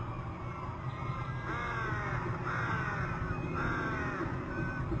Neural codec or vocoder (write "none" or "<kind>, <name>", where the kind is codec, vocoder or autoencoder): none